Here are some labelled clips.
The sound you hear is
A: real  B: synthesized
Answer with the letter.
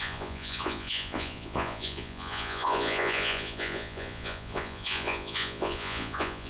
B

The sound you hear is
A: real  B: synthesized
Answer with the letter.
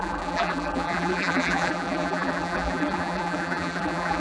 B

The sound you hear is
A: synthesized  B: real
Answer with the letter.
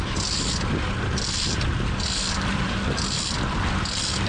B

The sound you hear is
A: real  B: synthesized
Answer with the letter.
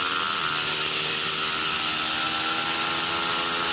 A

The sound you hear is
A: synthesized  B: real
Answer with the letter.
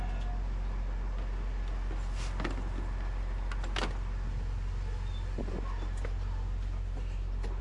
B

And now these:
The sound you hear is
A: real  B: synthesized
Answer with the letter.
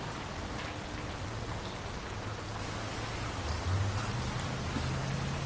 A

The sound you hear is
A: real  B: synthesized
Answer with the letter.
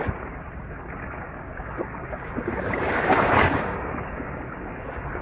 B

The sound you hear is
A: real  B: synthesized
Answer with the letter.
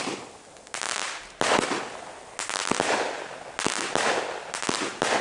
A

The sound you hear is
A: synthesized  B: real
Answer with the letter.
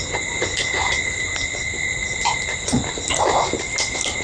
B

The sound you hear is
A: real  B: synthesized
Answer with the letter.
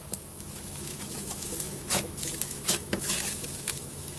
B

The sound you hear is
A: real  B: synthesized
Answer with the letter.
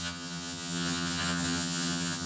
B